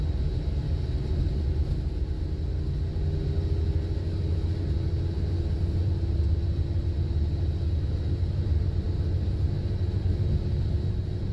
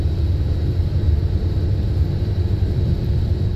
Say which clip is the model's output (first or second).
second